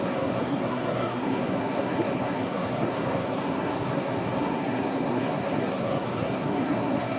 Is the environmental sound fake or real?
fake